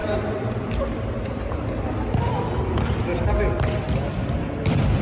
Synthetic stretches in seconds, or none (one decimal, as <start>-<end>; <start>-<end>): none